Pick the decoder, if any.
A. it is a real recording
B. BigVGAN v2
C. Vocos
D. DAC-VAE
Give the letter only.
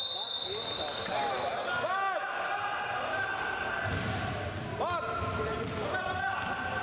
A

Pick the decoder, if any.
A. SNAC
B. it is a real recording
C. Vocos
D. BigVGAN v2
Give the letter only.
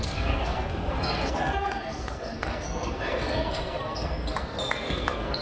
A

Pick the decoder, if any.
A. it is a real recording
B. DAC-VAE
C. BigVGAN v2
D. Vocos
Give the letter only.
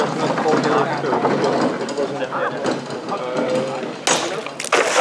A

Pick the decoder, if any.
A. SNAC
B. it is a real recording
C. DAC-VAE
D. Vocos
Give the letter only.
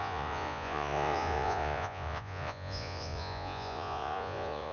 D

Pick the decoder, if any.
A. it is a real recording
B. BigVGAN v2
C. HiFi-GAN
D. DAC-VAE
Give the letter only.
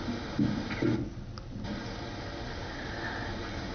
A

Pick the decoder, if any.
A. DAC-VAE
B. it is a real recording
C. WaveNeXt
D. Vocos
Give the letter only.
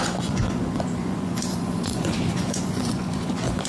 D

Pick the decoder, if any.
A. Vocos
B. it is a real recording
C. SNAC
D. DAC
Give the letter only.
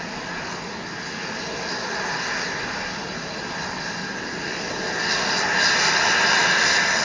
B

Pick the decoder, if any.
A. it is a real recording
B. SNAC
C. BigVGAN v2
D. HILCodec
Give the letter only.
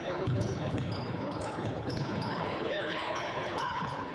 D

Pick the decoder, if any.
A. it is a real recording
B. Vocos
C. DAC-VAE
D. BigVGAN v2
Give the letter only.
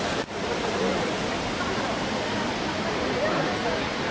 A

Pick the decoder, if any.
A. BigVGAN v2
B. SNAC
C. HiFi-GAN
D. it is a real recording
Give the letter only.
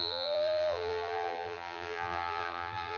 A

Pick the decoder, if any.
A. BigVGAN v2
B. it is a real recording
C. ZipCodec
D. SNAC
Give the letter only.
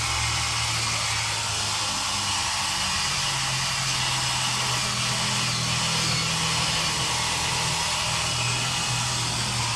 B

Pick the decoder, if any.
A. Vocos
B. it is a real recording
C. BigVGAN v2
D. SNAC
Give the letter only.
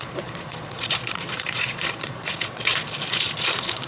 A